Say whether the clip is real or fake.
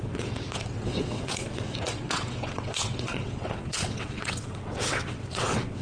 fake